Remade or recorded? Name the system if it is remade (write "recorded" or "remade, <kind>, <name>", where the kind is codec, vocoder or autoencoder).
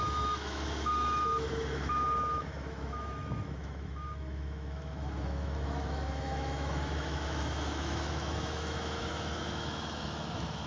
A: remade, autoencoder, DAC-VAE